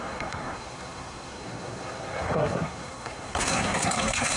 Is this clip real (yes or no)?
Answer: no